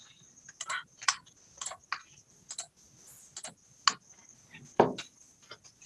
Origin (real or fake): real